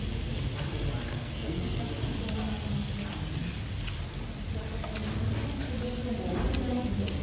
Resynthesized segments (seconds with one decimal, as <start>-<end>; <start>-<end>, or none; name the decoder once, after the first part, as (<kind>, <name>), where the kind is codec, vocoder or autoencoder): 1.1-1.8 (codec, SNAC)